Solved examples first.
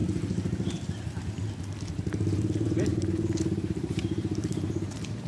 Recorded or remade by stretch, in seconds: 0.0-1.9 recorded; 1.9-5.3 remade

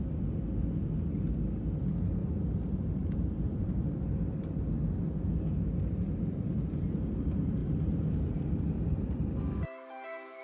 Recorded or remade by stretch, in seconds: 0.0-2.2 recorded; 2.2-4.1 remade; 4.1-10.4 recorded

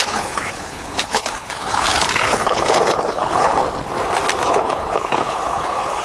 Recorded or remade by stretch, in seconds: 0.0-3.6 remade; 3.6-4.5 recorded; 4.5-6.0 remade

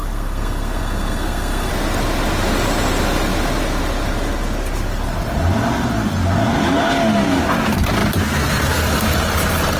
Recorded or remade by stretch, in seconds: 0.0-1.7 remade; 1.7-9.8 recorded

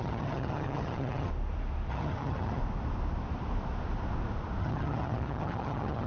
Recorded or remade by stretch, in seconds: 0.0-1.3 remade; 1.3-1.9 recorded; 1.9-2.6 remade; 2.6-4.6 recorded; 4.6-6.1 remade